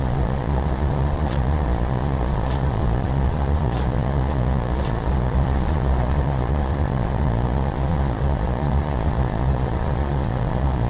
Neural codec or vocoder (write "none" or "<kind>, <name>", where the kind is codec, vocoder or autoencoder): vocoder, Vocos